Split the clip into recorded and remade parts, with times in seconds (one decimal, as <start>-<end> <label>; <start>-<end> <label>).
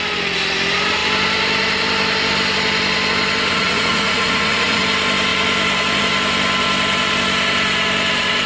0.0-3.5 recorded; 3.5-4.8 remade; 4.8-8.5 recorded